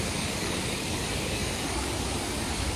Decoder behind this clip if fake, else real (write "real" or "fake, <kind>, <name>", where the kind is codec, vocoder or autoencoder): fake, codec, DAC